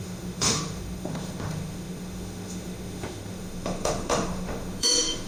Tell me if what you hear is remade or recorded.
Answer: remade